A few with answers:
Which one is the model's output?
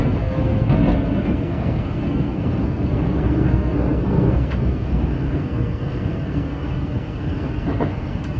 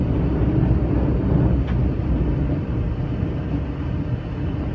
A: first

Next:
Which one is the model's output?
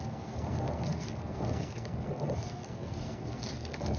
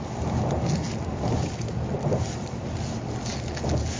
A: first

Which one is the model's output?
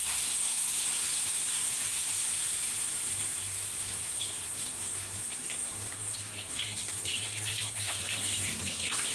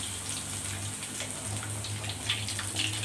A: first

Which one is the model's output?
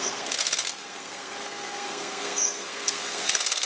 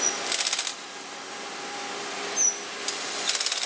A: first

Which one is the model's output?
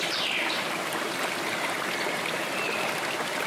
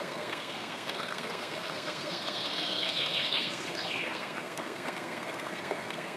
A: second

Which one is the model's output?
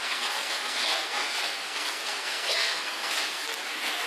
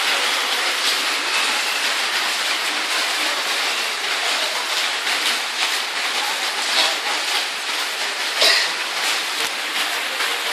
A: first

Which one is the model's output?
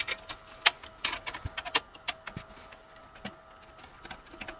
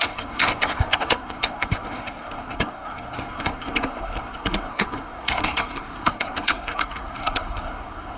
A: second